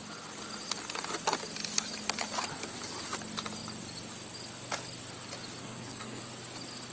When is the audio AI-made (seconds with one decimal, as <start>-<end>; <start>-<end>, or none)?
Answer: 5.6-6.2